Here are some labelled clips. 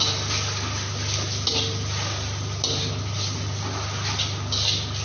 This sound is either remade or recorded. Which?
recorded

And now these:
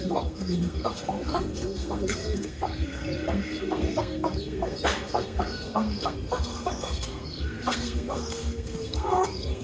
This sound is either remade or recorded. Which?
remade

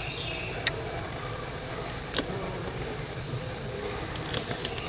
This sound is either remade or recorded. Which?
recorded